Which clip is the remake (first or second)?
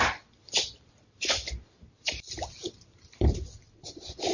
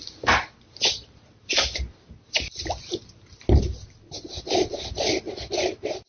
first